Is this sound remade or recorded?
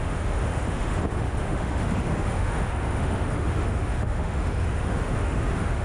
remade